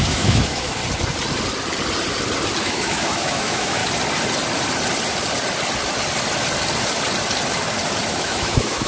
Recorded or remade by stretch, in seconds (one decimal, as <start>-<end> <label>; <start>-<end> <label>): 0.0-0.8 remade; 0.8-2.6 recorded; 2.6-3.8 remade; 3.8-8.1 recorded; 8.1-8.9 remade